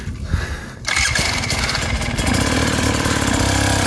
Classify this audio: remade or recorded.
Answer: recorded